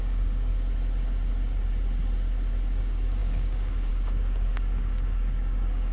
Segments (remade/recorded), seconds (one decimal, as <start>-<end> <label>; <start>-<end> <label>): 0.0-0.5 remade; 0.5-2.8 recorded; 2.8-5.9 remade